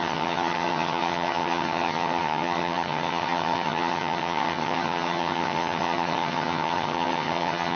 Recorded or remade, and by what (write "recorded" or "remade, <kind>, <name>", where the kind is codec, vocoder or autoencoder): remade, vocoder, HiFi-GAN